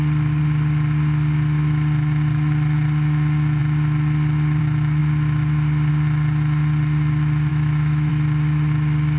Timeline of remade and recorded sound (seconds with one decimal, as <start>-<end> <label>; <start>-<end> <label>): 0.0-7.5 recorded; 7.5-8.1 remade; 8.1-9.2 recorded